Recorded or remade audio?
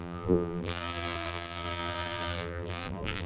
remade